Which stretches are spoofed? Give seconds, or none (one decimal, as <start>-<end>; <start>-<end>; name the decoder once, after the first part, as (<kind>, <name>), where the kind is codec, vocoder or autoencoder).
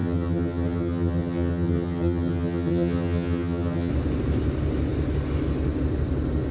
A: 0.0-3.9 (vocoder, HiFi-GAN)